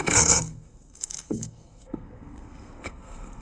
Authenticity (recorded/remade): remade